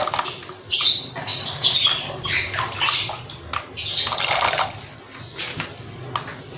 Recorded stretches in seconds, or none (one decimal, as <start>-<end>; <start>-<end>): 0.0-1.3; 2.3-6.6